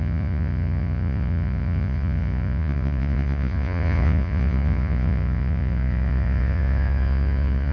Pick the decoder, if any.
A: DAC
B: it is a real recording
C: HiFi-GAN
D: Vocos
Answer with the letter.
D